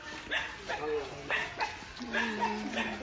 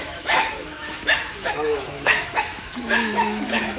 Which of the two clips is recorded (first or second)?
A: first